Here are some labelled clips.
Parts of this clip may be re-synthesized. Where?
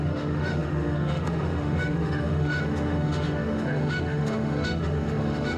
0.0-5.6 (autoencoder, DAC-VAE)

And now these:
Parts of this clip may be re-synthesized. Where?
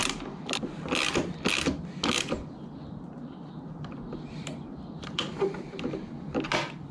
none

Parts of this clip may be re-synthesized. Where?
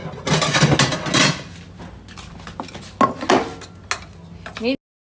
none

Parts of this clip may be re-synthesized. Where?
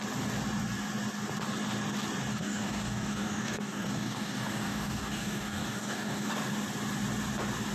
2.3-6.3 (codec, DAC)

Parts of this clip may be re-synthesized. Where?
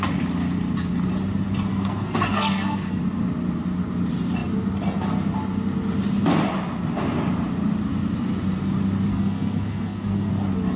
1.7-3.0 (codec, SNAC); 9.1-10.3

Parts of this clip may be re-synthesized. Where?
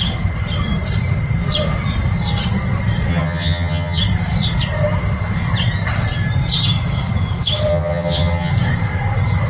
3.1-4.0 (vocoder, HiFi-GAN); 7.7-8.5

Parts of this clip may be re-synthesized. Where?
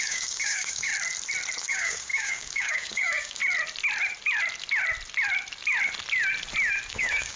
0.0-0.9 (codec, DAC); 1.6-3.4; 6.9-7.4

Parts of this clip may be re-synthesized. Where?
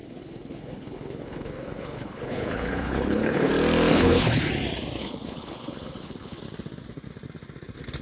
0.0-3.5 (codec, HILCodec); 3.9-4.5; 5.0-6.4